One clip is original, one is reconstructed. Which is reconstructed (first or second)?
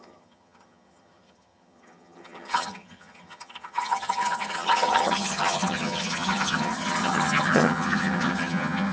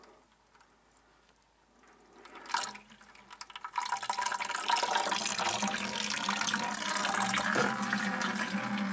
first